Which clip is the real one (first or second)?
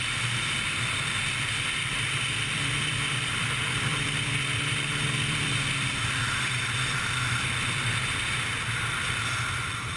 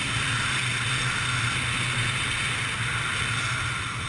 second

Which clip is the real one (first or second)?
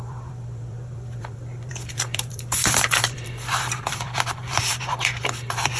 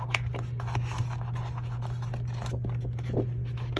second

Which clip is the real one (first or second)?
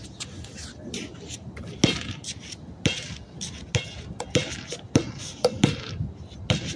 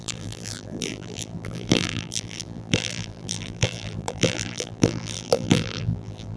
first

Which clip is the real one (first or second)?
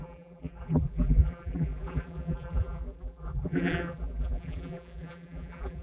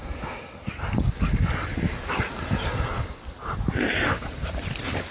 second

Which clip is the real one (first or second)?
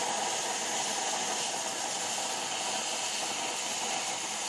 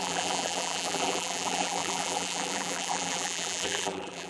first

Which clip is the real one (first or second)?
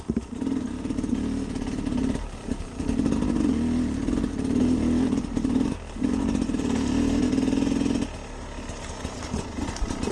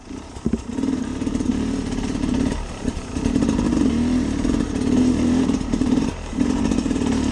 first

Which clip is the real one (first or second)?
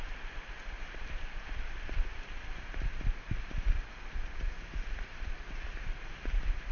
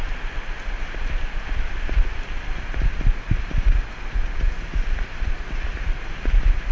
second